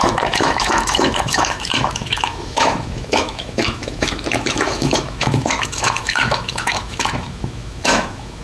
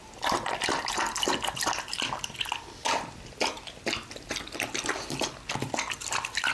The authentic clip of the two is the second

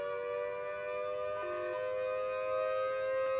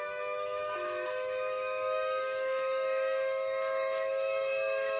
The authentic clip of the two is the first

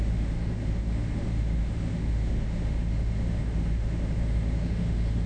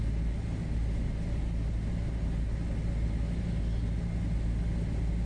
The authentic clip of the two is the second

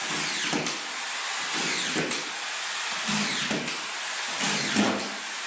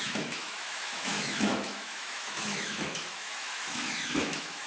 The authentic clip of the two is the first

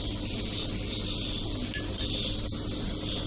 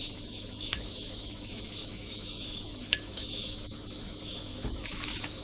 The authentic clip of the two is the first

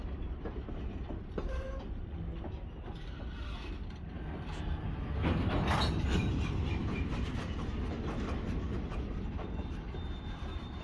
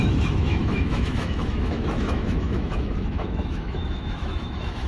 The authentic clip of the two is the first